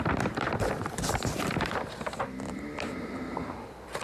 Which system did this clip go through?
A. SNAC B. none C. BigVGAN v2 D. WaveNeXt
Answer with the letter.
C